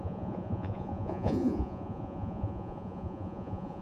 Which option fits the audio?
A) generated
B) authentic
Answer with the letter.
A